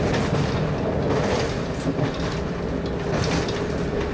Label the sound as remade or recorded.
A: recorded